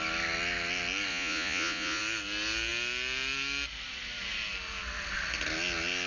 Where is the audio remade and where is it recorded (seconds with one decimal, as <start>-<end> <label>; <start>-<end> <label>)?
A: 0.0-1.1 recorded; 1.1-2.0 remade; 2.0-6.1 recorded